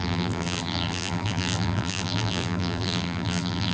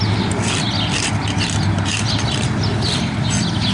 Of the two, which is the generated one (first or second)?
first